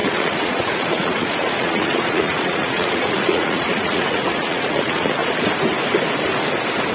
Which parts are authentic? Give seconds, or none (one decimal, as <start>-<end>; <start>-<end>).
5.2-6.9